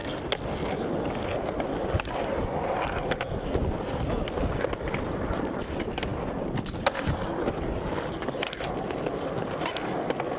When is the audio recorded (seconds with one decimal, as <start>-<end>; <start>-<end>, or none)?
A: 0.0-10.4